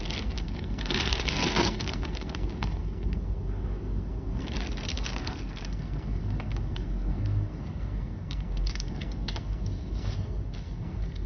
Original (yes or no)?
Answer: no